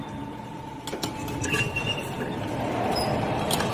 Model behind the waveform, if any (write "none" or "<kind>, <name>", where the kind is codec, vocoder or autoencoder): none